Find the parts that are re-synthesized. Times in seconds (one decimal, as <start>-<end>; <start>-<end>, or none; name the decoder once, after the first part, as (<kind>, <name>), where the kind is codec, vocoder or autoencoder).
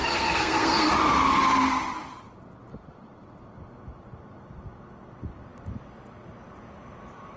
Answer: 0.0-0.9 (codec, SNAC)